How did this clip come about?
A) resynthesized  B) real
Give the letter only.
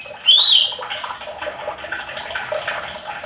B